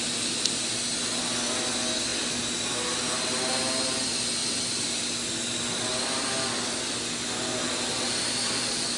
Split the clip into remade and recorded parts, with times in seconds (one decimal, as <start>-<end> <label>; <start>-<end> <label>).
0.0-9.0 recorded